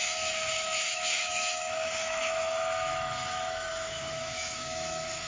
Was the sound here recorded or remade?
remade